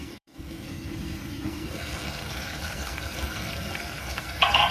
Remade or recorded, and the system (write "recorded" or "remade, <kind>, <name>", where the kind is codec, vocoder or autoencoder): remade, codec, SNAC